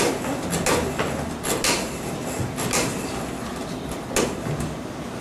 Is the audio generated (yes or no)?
no